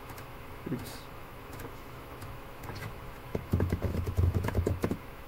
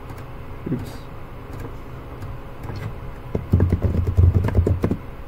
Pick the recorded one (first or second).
second